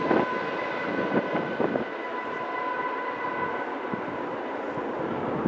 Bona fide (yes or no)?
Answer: yes